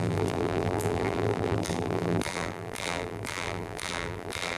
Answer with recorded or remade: remade